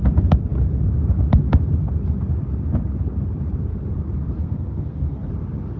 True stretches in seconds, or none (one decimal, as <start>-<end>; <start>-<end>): 0.0-4.4; 5.3-5.8